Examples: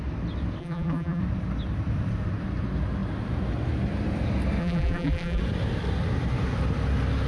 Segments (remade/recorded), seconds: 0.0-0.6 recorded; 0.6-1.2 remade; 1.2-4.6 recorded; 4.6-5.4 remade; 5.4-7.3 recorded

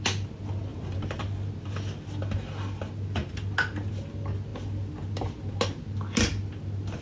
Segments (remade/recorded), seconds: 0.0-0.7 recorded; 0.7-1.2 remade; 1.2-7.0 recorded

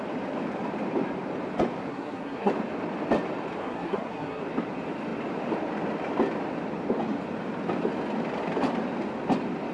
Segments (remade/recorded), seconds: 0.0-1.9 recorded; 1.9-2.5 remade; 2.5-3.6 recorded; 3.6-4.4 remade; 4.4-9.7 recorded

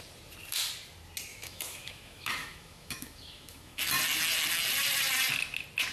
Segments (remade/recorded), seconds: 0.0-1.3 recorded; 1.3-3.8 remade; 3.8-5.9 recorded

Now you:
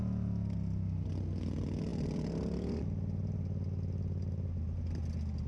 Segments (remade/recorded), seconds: 0.0-5.5 recorded

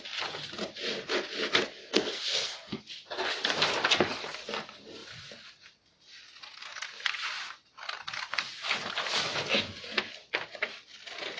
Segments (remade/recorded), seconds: 0.0-1.8 recorded; 1.8-2.8 remade; 2.8-11.4 recorded